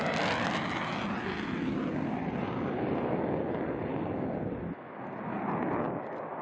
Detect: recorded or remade recorded